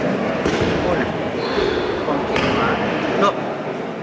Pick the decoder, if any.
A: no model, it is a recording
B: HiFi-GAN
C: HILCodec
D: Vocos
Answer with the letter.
A